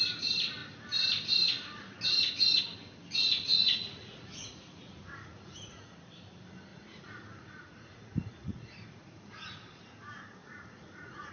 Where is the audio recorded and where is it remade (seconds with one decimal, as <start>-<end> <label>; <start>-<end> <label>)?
0.0-3.5 recorded; 3.5-5.8 remade; 5.8-6.7 recorded; 6.7-9.8 remade; 9.8-10.4 recorded; 10.4-11.3 remade

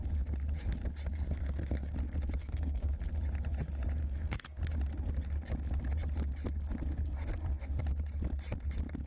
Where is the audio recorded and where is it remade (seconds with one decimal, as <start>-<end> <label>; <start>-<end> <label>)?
0.0-1.1 recorded; 1.1-1.9 remade; 1.9-2.4 recorded; 2.4-2.9 remade; 2.9-4.0 recorded; 4.0-4.6 remade; 4.6-9.1 recorded